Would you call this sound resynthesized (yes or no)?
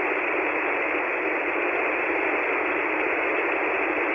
no